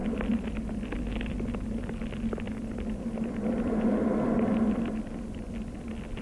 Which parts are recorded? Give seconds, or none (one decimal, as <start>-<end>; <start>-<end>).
0.0-6.2